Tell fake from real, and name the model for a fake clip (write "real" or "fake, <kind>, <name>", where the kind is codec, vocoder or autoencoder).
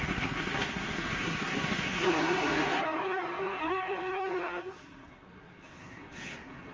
fake, codec, SNAC